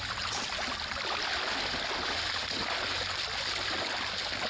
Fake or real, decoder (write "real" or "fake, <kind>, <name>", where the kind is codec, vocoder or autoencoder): real